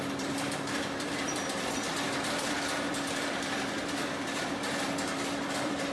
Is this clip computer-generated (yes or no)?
yes